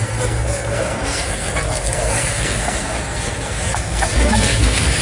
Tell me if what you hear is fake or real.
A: fake